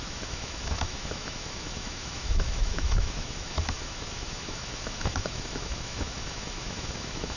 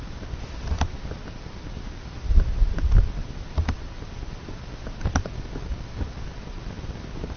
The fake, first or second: first